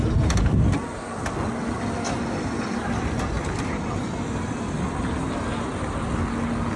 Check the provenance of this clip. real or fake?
real